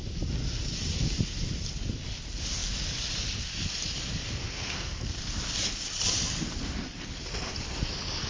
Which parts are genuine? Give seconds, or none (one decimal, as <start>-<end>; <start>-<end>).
0.0-4.4; 5.2-8.3